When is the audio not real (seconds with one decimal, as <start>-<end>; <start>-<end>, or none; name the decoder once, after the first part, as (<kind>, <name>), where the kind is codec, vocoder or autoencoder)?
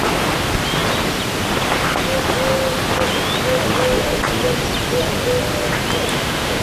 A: 6.1-6.6 (autoencoder, DAC-VAE)